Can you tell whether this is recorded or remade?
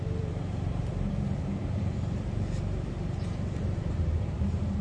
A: remade